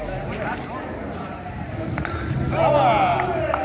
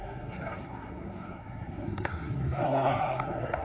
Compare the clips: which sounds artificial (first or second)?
second